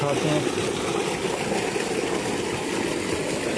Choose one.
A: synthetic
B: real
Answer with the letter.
B